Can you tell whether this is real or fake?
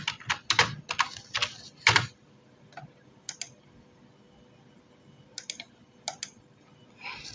real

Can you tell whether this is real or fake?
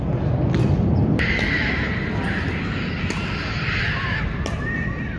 real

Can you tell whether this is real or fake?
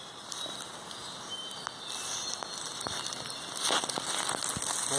real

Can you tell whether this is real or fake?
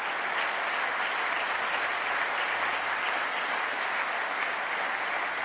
real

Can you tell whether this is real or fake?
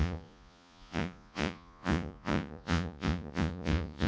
fake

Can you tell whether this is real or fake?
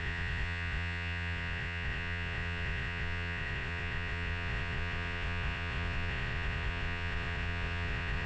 fake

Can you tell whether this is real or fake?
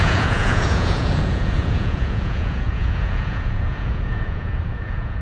fake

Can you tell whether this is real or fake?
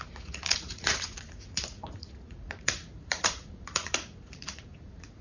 fake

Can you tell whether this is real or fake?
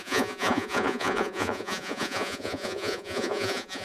fake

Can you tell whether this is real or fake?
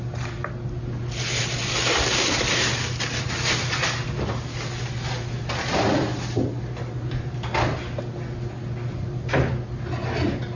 real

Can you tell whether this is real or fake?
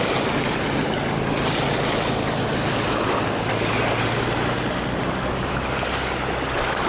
real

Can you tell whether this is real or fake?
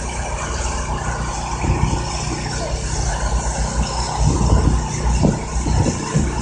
real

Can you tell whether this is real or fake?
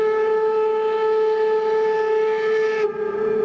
real